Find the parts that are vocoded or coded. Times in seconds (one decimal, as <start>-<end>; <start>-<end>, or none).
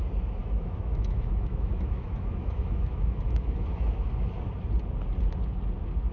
0.4-4.1